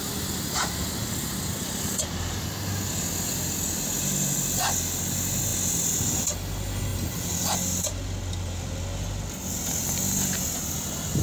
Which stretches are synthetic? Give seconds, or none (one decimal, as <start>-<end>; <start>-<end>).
none